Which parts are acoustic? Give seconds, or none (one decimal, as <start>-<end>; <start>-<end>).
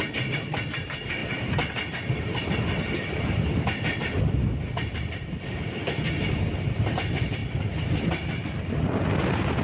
0.0-9.6